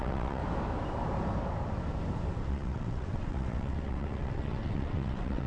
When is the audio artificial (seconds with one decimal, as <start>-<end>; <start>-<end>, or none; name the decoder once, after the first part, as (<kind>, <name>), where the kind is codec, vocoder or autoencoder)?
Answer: 0.0-0.4 (vocoder, WaveNeXt); 2.4-5.5